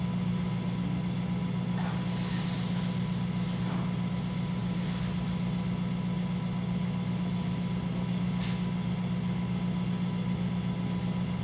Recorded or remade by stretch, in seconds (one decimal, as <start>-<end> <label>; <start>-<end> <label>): 0.0-11.4 recorded